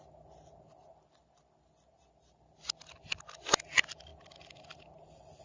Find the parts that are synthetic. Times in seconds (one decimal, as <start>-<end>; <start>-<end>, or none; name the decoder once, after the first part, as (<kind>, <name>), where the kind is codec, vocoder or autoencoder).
none